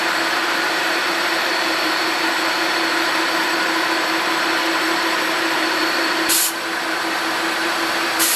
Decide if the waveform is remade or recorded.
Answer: remade